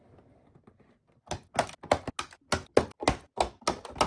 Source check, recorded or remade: recorded